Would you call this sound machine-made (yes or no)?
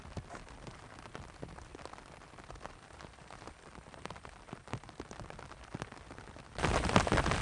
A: no